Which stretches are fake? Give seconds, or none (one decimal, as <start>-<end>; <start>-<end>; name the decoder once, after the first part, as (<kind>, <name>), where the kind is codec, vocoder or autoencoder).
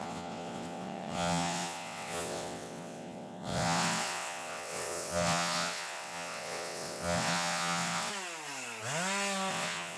0.0-8.1 (vocoder, WaveNeXt); 9.5-10.0